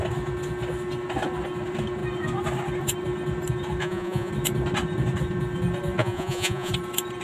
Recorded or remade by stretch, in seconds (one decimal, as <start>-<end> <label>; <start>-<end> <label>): 0.0-3.8 recorded; 3.8-4.3 remade; 4.3-6.0 recorded; 6.0-6.7 remade; 6.7-7.2 recorded